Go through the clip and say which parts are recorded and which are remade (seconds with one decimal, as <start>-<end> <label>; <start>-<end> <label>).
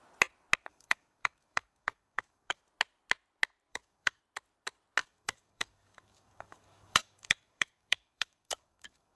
0.0-0.7 recorded; 0.7-2.6 remade; 2.6-3.7 recorded; 3.7-4.2 remade; 4.2-5.0 recorded; 5.0-9.2 remade